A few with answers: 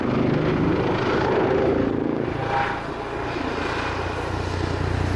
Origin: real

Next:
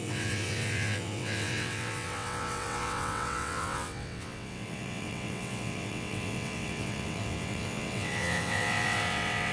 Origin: fake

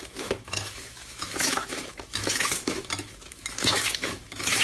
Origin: fake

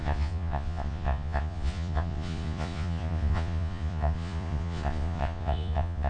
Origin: fake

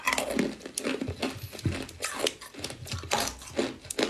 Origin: real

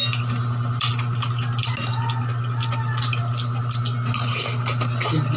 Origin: real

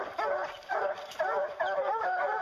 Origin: real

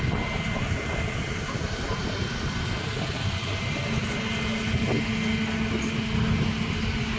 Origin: real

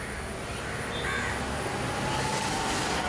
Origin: real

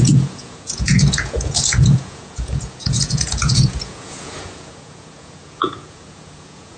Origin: fake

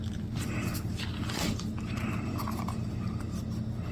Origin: fake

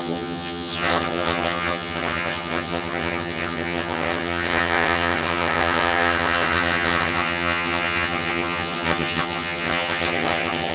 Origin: fake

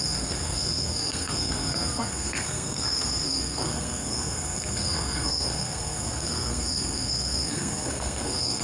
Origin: fake